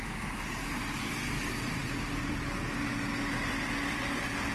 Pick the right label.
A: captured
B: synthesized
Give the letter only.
A